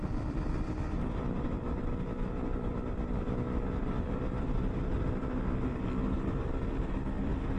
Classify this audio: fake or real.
fake